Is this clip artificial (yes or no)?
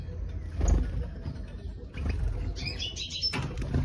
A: no